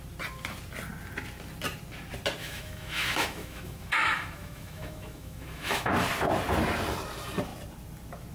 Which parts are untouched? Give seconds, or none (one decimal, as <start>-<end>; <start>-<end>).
0.0-2.4; 5.9-8.3